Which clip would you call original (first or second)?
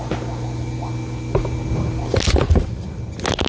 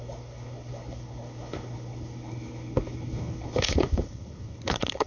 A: first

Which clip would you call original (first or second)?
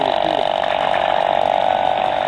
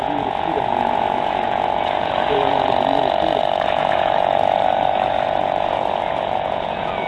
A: first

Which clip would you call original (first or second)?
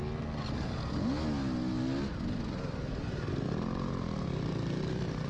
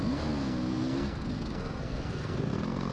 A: first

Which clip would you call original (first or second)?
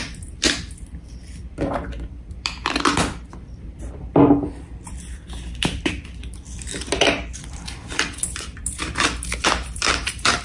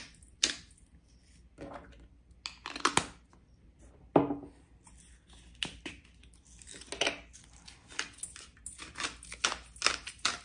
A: second